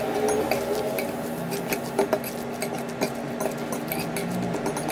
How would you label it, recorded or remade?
recorded